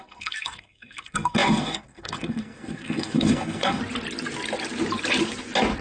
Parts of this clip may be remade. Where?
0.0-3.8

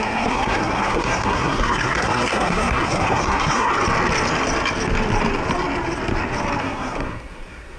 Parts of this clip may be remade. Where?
0.0-3.7; 6.6-7.8

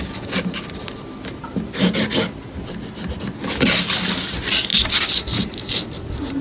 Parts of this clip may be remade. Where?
none

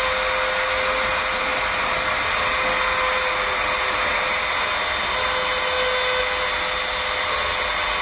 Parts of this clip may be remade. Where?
none

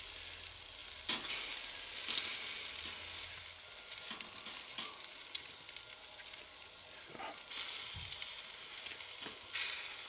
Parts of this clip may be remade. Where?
none

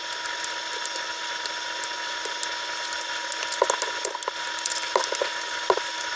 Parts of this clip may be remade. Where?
none

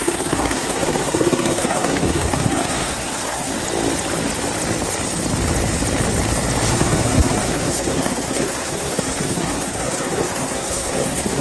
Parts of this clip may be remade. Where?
0.0-3.5; 6.7-11.4

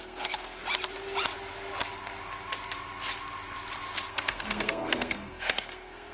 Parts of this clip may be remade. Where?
0.0-0.6; 4.1-6.1